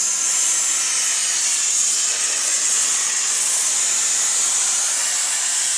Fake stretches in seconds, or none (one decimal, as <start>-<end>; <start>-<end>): 1.5-3.7